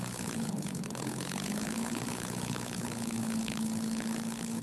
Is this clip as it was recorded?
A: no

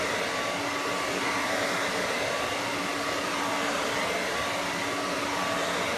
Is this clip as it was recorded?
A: yes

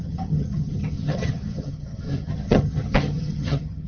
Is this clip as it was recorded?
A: no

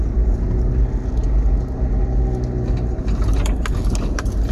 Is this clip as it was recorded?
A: yes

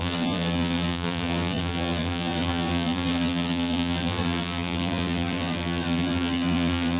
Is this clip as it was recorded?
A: no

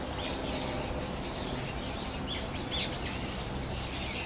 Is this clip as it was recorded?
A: yes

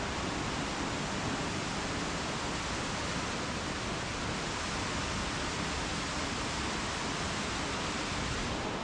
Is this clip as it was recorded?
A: yes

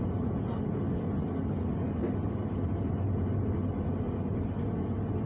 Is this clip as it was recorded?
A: yes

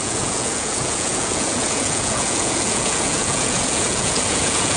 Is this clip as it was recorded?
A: no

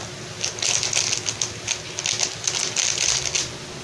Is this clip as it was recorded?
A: yes